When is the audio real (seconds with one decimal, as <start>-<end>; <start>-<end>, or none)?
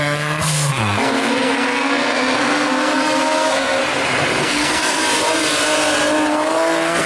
3.8-4.4; 5.0-6.3